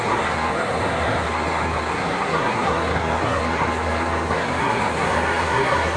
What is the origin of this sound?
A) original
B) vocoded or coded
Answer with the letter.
B